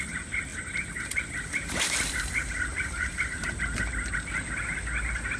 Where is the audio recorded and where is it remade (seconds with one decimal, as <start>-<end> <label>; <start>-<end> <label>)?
0.0-5.4 recorded